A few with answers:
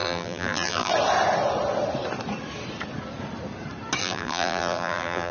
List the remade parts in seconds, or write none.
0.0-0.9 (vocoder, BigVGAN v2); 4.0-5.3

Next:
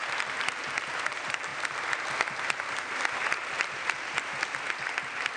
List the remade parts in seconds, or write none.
none

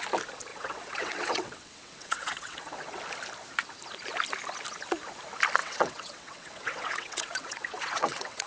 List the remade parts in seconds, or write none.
0.5-3.0 (vocoder, WaveNeXt); 5.6-8.5

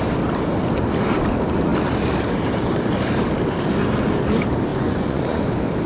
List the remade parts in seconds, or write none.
4.7-5.5 (vocoder, Vocos)